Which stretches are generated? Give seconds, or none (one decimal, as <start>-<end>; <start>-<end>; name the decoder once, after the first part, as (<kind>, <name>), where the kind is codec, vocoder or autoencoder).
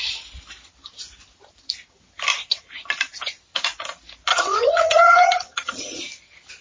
4.3-6.0 (vocoder, HiFi-GAN)